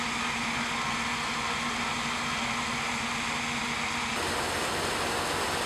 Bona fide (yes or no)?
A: yes